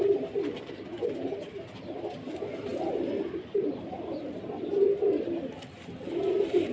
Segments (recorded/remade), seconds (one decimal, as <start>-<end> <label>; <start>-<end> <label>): 0.0-6.7 recorded